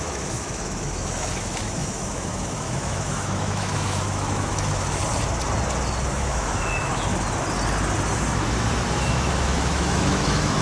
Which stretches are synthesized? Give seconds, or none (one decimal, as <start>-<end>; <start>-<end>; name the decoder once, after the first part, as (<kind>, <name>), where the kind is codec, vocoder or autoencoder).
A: 0.0-5.0 (autoencoder, DAC-VAE); 6.1-7.1; 9.1-10.6